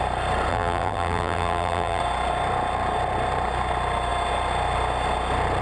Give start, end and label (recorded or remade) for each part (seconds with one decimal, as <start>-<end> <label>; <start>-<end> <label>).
0.0-0.5 recorded; 0.5-2.0 remade; 2.0-5.6 recorded